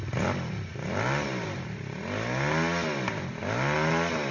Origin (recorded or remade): recorded